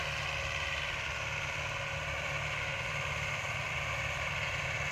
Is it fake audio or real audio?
real